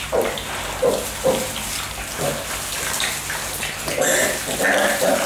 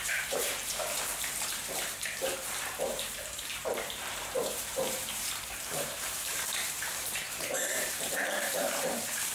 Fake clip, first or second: second